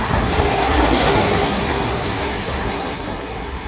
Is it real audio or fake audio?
fake